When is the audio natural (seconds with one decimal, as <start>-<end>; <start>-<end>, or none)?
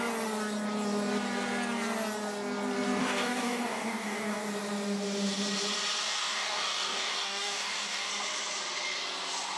0.0-3.0; 4.4-6.0; 8.1-9.6